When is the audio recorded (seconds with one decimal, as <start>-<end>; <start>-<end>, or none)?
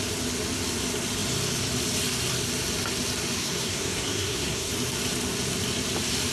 0.0-3.4; 4.7-6.3